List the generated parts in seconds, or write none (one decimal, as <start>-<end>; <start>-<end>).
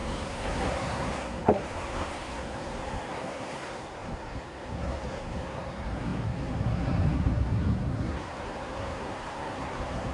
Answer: 0.0-10.1